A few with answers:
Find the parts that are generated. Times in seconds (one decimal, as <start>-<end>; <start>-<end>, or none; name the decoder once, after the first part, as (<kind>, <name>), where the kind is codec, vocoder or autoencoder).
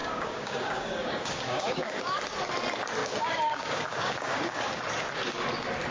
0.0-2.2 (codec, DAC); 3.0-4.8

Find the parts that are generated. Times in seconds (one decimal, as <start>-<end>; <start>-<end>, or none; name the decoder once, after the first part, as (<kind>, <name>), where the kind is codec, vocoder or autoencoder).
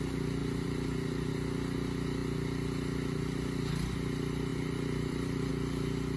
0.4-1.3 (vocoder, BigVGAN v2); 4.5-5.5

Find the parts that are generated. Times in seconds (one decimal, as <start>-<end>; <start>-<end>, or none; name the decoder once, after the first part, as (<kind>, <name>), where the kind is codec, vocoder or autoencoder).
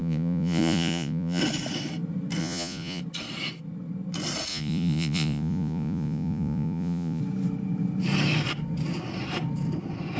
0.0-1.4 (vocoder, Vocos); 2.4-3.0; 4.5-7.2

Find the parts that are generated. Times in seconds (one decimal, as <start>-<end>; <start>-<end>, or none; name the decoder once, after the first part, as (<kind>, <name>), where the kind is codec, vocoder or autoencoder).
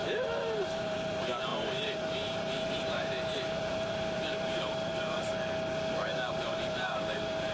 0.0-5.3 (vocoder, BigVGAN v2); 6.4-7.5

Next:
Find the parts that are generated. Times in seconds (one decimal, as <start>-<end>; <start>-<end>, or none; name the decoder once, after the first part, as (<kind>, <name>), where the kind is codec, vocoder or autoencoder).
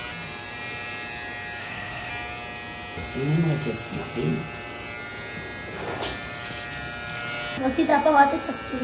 1.6-2.1 (codec, SNAC)